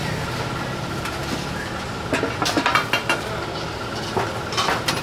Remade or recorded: recorded